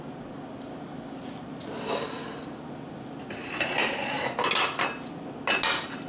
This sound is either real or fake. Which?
real